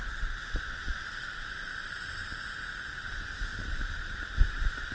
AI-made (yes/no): no